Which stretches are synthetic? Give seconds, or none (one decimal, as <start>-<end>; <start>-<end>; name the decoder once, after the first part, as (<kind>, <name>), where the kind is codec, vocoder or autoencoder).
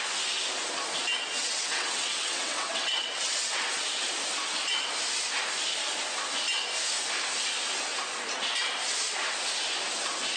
1.4-3.8 (vocoder, WaveNeXt)